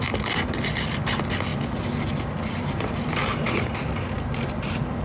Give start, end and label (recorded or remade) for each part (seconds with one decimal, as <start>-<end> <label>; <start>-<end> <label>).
0.0-5.0 recorded